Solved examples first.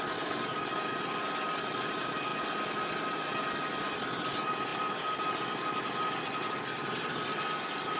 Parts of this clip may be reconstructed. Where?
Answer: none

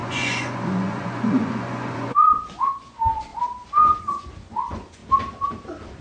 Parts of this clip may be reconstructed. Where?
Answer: 0.0-3.3; 4.0-5.0